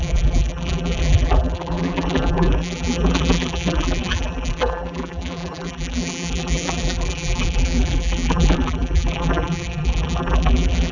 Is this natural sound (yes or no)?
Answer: no